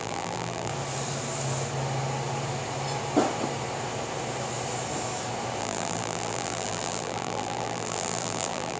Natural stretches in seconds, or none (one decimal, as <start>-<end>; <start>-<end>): 0.7-5.6